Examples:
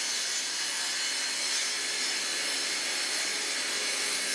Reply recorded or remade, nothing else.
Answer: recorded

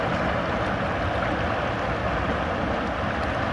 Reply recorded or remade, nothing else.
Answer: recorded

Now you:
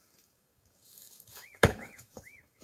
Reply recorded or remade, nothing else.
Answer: remade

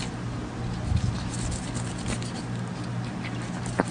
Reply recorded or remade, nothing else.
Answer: recorded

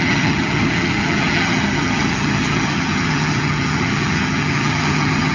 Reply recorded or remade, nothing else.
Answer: remade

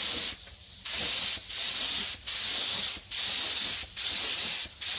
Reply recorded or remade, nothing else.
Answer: recorded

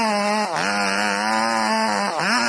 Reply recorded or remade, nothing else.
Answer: recorded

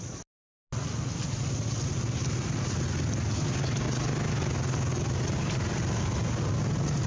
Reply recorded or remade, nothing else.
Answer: recorded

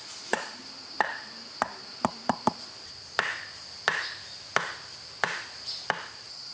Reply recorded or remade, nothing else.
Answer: recorded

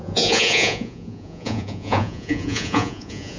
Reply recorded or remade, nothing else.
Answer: remade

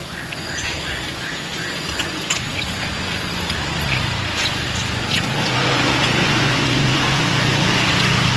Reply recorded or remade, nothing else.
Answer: remade